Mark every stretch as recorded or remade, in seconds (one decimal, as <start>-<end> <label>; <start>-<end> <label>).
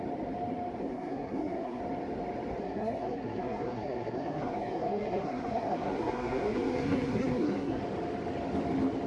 0.0-0.8 recorded; 0.8-1.8 remade; 1.8-2.6 recorded; 2.6-7.8 remade; 7.8-9.1 recorded